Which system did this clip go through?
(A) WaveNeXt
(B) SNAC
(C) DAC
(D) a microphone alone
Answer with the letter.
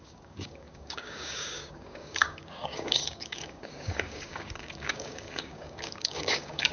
C